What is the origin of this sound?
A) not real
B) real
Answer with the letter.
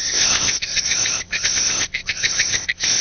A